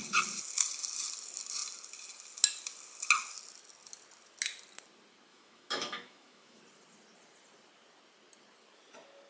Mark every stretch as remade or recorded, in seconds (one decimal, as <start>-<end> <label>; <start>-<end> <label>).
0.0-5.3 recorded; 5.3-6.6 remade; 6.6-9.3 recorded